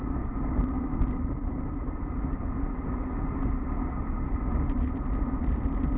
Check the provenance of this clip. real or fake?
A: real